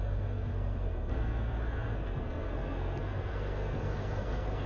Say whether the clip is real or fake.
fake